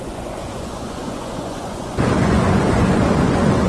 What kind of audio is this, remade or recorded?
remade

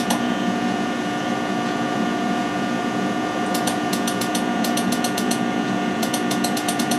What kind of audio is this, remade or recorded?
remade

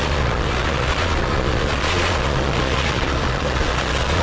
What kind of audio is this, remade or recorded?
remade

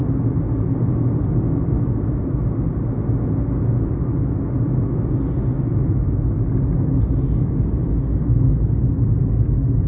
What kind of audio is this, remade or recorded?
recorded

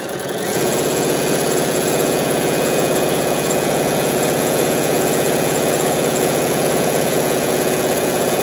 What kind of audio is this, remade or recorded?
remade